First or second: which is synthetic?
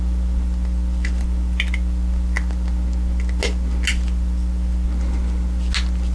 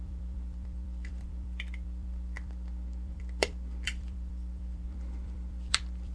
second